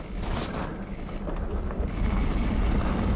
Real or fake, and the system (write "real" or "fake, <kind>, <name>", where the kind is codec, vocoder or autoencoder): real